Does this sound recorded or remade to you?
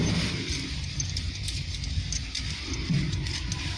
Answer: recorded